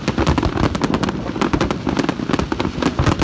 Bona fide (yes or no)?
yes